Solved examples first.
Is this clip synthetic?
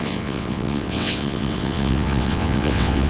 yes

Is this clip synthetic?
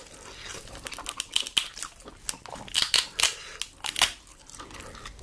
no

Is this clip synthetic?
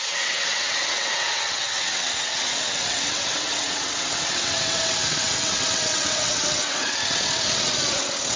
yes